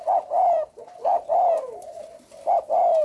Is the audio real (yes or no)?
yes